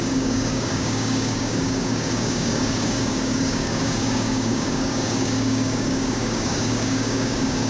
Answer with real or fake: fake